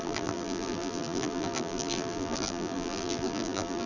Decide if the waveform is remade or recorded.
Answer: remade